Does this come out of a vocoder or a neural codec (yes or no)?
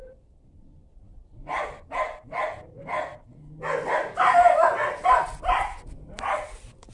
no